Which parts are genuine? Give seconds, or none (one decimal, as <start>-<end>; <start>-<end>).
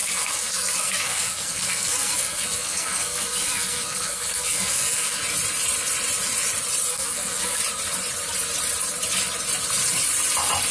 5.2-6.9; 7.6-10.7